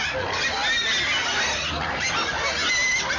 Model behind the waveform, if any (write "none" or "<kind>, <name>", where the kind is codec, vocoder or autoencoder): none